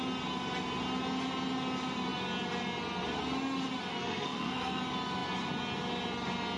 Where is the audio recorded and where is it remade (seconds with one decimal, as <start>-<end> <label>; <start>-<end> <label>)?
0.0-3.9 recorded; 3.9-4.8 remade; 4.8-6.6 recorded